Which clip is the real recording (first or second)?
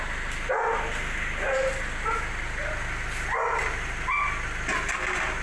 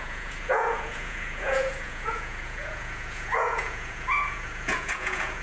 first